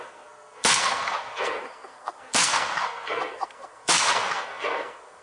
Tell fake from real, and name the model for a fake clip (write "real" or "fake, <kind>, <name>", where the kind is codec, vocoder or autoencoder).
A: fake, codec, SNAC